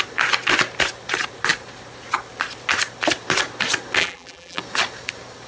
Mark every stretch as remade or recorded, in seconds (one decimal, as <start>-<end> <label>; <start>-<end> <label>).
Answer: 0.0-4.0 recorded; 4.0-4.6 remade; 4.6-5.5 recorded